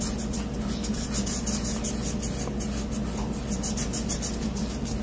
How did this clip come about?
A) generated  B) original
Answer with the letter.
B